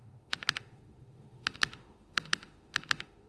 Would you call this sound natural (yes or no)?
no